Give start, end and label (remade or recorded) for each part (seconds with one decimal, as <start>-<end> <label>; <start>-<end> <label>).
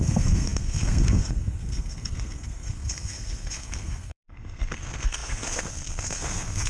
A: 0.0-6.7 remade